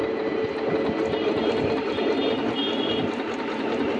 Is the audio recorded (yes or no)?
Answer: yes